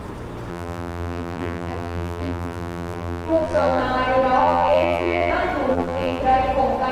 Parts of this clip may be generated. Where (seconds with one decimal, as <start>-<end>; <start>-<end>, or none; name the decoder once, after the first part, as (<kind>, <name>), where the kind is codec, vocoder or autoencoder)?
0.5-3.8 (vocoder, BigVGAN v2); 4.4-5.3; 5.7-6.2